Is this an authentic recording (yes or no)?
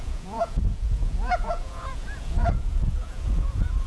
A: no